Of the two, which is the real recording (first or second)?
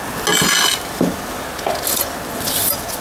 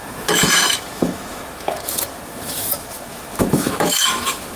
first